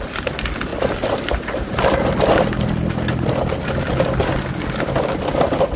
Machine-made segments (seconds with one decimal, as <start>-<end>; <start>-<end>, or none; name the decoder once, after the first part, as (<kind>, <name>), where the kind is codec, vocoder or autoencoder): none